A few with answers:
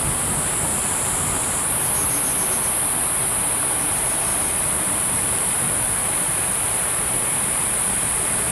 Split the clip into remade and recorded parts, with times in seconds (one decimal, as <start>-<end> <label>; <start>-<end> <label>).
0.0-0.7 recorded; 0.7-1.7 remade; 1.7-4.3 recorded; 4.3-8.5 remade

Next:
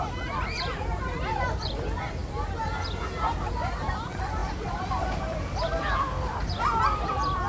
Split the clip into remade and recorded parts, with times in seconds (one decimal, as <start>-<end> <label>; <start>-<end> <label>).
0.0-2.2 remade; 2.2-3.9 recorded; 3.9-7.5 remade

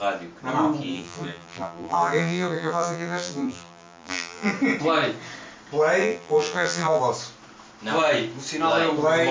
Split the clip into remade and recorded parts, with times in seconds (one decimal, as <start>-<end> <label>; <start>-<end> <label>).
0.0-0.9 recorded; 0.9-4.5 remade; 4.5-6.0 recorded; 6.0-7.0 remade; 7.0-9.3 recorded

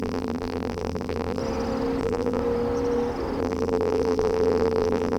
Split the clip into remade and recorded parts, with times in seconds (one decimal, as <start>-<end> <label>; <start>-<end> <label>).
0.0-1.4 remade; 1.4-2.0 recorded; 2.0-2.4 remade; 2.4-3.4 recorded; 3.4-5.2 remade

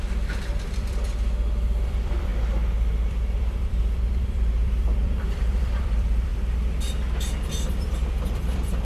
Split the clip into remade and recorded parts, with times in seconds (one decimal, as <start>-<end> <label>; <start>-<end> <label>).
0.0-2.3 remade; 2.3-3.1 recorded; 3.1-6.3 remade; 6.3-7.5 recorded; 7.5-8.8 remade

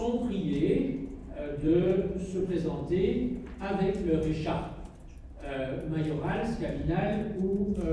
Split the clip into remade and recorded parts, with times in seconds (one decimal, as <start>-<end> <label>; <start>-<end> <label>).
0.0-1.2 recorded; 1.2-2.5 remade; 2.5-7.9 recorded